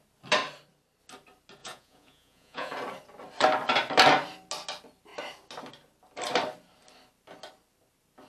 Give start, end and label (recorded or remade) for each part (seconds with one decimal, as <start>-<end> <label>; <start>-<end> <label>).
0.0-1.6 recorded; 1.6-2.7 remade; 2.7-8.3 recorded